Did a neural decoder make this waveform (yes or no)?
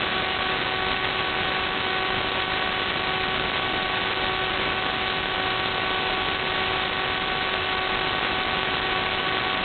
no